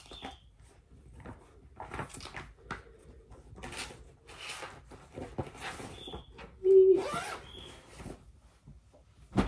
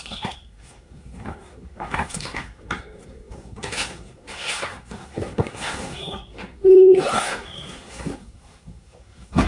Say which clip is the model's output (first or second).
second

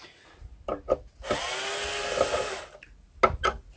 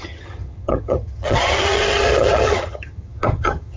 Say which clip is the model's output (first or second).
second